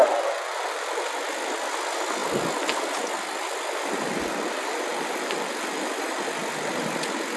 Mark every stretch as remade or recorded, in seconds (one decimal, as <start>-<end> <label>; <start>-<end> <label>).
0.0-7.4 recorded